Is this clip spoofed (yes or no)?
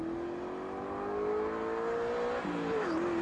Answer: no